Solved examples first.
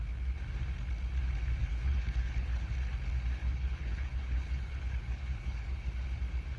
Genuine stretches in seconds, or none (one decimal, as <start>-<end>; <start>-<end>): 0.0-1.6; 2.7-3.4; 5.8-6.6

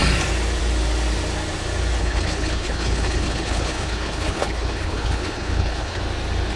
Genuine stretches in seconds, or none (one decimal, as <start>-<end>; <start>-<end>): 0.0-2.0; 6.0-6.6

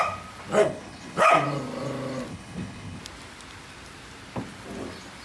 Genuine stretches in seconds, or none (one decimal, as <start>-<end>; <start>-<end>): 0.0-0.6; 1.3-2.3; 3.0-5.2

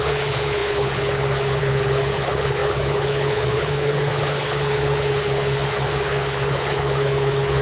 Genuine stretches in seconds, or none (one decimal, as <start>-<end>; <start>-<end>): none

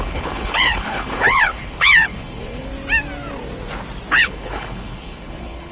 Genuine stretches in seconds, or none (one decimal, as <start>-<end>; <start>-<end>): 2.7-4.1

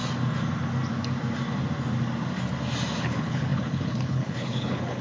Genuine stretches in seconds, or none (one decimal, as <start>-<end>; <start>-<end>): 0.0-3.0